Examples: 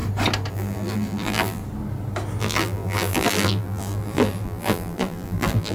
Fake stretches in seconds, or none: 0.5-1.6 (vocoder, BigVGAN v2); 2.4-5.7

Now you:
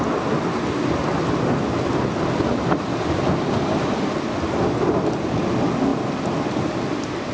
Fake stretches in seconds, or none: none

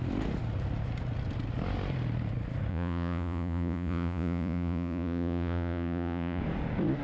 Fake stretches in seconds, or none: 2.7-6.4 (vocoder, Vocos)

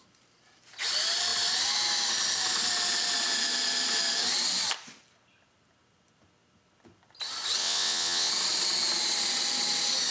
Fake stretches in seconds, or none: 7.6-8.3 (vocoder, WaveNeXt)

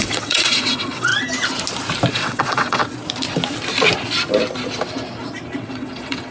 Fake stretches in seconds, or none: 0.0-1.1 (vocoder, WaveNeXt); 2.1-2.8; 5.6-6.3

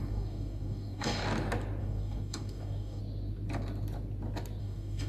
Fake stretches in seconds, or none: 0.0-1.2 (codec, DAC); 1.8-3.0; 4.6-5.1

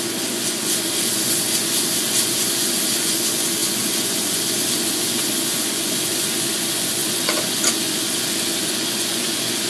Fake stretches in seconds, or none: 0.0-9.7 (vocoder, Vocos)